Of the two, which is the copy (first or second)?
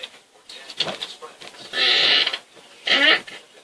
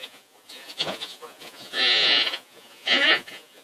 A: second